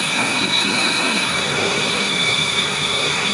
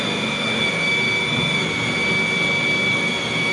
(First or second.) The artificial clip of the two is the first